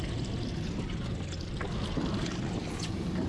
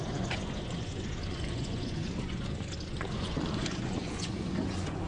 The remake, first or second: second